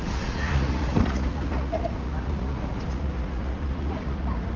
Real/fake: fake